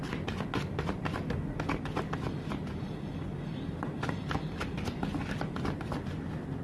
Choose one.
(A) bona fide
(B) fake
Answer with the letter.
A